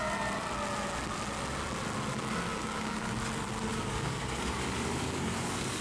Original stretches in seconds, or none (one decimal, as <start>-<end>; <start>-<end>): 0.0-2.5; 3.1-3.7